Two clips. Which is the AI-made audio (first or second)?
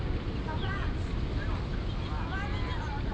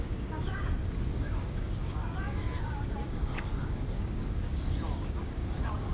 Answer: second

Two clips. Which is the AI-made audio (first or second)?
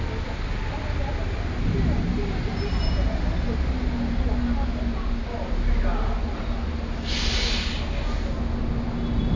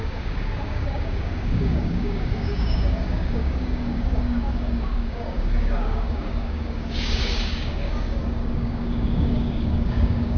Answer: second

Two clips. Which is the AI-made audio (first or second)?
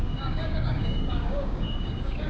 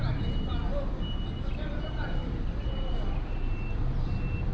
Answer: first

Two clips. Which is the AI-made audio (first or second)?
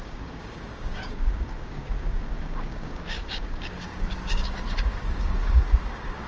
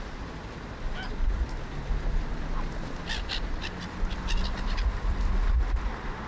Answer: first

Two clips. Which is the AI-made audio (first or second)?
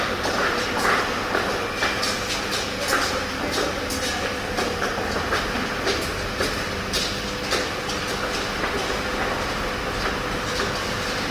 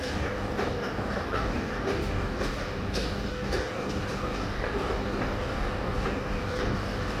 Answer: second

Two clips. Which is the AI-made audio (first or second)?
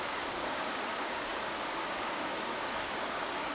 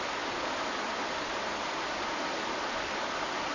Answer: first